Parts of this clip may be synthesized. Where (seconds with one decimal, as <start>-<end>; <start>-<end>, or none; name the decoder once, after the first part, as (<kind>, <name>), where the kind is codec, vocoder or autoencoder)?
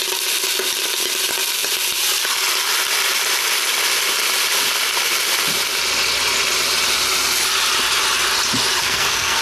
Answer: 8.8-9.4 (codec, SNAC)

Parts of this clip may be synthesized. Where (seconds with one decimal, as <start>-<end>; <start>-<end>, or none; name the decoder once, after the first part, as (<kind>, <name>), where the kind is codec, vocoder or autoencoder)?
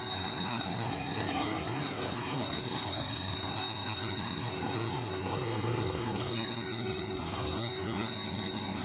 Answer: 0.0-8.8 (codec, SNAC)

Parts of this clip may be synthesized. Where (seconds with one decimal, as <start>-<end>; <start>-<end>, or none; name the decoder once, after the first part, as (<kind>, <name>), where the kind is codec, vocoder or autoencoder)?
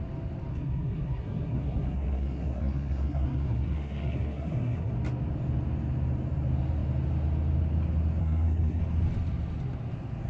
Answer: 0.5-4.9 (codec, SNAC); 8.2-8.8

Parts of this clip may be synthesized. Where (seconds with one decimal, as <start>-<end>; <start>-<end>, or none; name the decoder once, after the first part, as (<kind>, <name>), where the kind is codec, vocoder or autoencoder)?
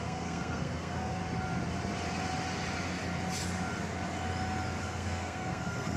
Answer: 0.0-1.2 (codec, SNAC); 4.8-6.0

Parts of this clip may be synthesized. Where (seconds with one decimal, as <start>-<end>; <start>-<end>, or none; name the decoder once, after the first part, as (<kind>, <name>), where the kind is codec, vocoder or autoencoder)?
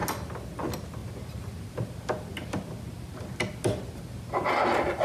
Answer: none